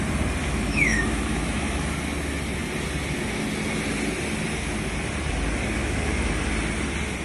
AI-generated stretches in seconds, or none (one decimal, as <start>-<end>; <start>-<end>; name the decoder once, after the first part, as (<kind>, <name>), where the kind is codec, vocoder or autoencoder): 0.4-1.9 (autoencoder, DAC-VAE); 5.8-6.3